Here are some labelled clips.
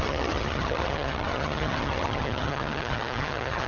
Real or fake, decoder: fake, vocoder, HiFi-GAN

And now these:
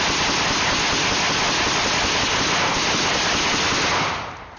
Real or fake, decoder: real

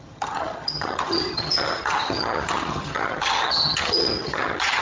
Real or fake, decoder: fake, vocoder, HiFi-GAN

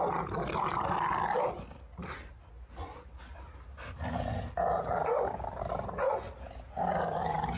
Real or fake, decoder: real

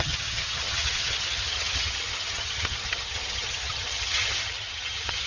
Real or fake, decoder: fake, vocoder, HiFi-GAN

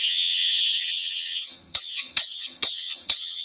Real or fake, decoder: fake, vocoder, HiFi-GAN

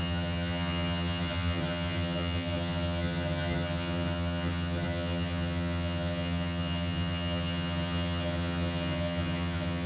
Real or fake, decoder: fake, vocoder, HiFi-GAN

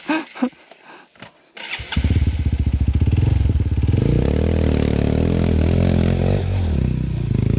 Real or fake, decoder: real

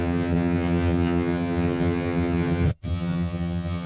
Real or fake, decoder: fake, vocoder, HiFi-GAN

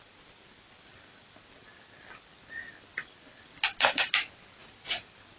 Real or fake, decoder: real